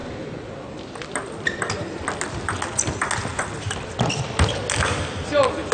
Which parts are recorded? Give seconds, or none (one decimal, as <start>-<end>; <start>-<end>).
2.2-3.3; 4.6-5.7